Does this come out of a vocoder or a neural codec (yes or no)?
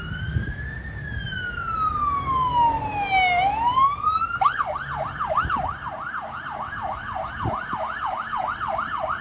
no